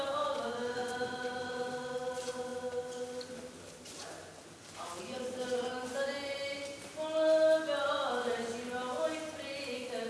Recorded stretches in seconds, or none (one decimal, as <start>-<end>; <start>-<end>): 0.0-10.1